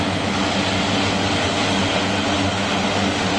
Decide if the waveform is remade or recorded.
recorded